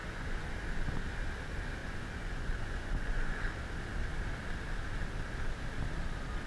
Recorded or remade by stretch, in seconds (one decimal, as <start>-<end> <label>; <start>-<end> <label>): 0.0-0.5 remade; 0.5-1.8 recorded; 1.8-3.5 remade; 3.5-6.5 recorded